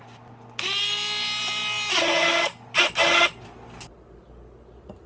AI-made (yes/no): no